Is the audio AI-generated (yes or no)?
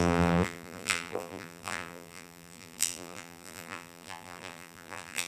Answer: yes